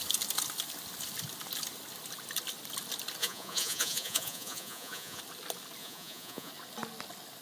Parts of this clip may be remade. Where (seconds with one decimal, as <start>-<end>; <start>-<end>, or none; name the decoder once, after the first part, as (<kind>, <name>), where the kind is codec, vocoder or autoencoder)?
3.2-5.2 (vocoder, Vocos); 5.8-6.5